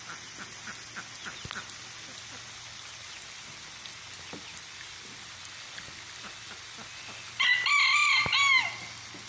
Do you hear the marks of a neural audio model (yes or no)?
no